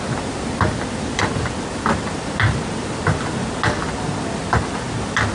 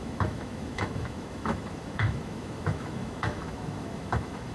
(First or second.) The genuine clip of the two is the first